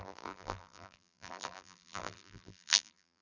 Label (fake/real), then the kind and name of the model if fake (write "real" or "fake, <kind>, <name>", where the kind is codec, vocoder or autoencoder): fake, vocoder, BigVGAN v2